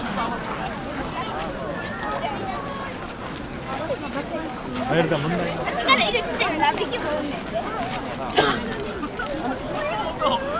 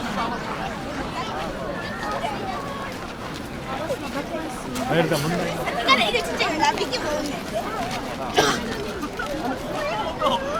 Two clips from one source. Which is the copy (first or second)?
second